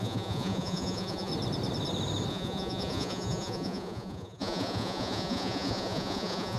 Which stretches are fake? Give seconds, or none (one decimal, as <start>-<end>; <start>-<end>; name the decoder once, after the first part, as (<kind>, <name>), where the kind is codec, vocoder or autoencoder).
0.0-1.3 (vocoder, Vocos); 2.3-6.6